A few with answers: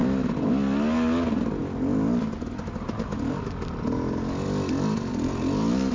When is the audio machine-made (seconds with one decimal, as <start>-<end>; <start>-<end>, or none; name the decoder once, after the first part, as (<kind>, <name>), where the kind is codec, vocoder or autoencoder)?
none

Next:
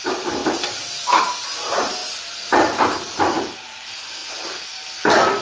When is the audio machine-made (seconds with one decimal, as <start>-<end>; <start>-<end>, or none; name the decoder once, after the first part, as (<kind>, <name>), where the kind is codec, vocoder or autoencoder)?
0.0-5.4 (vocoder, BigVGAN v2)

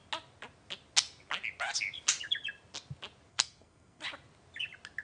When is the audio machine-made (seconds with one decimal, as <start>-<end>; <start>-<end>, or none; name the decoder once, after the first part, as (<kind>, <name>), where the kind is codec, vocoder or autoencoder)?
3.3-4.0 (codec, SNAC)